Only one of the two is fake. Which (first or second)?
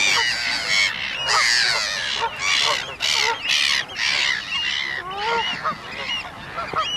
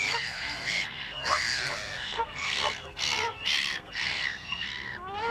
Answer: second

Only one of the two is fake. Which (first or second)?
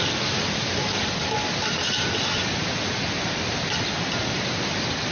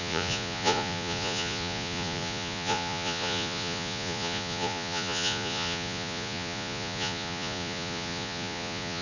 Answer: second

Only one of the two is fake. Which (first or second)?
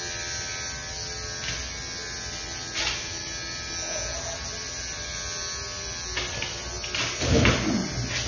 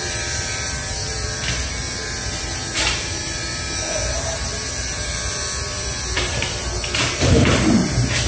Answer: second